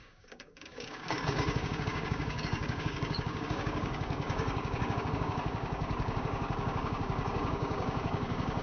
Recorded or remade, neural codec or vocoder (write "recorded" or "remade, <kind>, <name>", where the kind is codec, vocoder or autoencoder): remade, codec, DAC